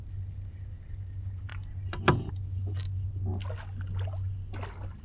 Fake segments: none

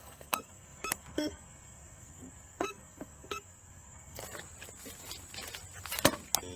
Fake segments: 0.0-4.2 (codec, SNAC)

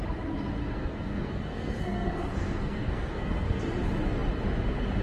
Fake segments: 0.6-3.6 (codec, SNAC)

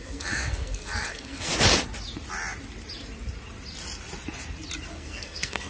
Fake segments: 0.0-1.5 (codec, SNAC); 4.9-5.7

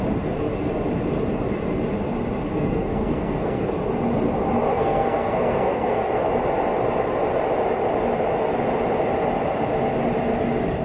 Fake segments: 2.5-3.7 (codec, SNAC); 4.7-6.3